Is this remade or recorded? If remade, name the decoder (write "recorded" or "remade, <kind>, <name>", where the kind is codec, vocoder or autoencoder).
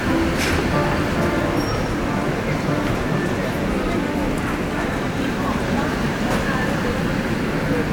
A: recorded